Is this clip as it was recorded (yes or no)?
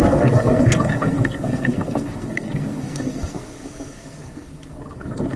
no